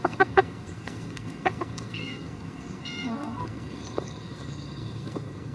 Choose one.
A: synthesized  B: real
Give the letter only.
A